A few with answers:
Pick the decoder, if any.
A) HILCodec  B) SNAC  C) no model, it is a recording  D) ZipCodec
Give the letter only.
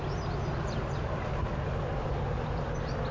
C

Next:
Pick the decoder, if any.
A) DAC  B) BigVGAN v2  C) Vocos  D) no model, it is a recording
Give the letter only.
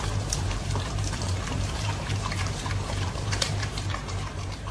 B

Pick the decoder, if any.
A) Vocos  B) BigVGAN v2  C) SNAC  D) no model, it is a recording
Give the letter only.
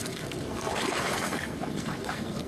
C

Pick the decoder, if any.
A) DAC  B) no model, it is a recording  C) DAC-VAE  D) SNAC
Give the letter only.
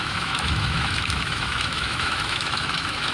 C